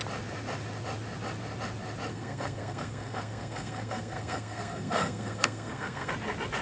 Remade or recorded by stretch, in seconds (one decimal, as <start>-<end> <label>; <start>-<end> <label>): 0.0-2.1 recorded; 2.1-6.1 remade; 6.1-6.6 recorded